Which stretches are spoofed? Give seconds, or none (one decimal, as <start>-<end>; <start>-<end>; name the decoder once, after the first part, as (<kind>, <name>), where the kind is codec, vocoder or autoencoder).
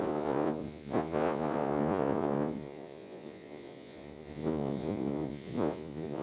0.0-6.2 (vocoder, Vocos)